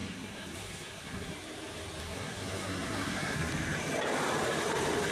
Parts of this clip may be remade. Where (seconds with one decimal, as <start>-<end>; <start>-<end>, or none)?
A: 0.0-1.3; 2.0-3.5

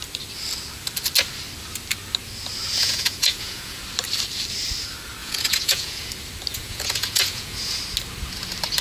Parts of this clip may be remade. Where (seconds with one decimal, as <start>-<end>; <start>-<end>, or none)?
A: 2.8-3.8; 5.2-6.1; 6.5-7.8

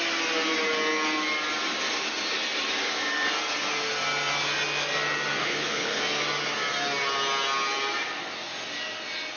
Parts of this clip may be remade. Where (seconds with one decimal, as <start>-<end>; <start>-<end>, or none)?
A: 5.4-6.0

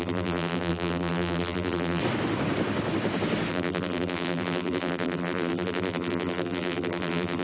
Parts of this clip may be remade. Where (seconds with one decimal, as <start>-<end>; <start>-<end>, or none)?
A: 0.0-2.0; 3.5-7.4

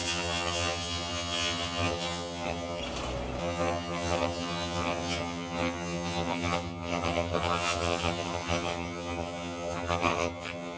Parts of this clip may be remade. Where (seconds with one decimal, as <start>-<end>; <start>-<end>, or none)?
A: 0.0-2.8; 3.4-10.8

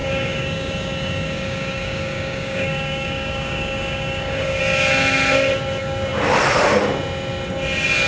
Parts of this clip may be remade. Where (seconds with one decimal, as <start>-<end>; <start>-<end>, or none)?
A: 0.0-4.6

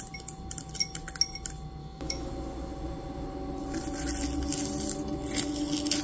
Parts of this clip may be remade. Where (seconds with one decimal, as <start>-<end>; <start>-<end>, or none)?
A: 1.8-2.3